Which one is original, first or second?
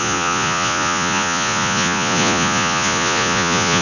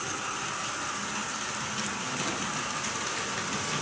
second